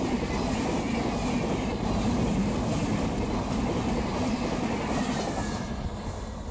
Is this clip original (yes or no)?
yes